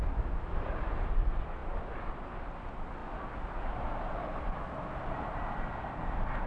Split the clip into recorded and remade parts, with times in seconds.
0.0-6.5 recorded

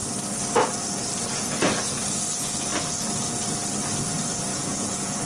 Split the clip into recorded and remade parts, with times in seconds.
0.0-4.5 recorded; 4.5-5.3 remade

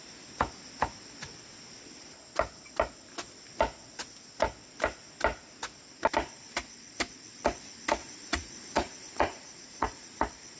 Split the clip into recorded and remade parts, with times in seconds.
0.0-8.0 recorded; 8.0-10.2 remade; 10.2-10.6 recorded

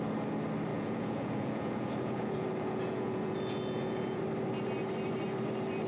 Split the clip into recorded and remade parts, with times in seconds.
0.0-0.7 recorded; 0.7-4.2 remade; 4.2-5.9 recorded